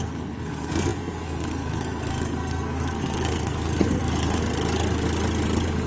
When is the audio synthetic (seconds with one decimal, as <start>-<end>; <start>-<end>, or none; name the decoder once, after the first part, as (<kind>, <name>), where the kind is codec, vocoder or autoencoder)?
0.0-4.4 (codec, SNAC)